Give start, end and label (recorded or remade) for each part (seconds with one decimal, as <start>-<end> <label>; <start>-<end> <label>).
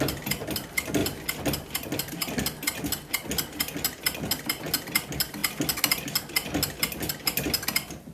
0.0-8.1 recorded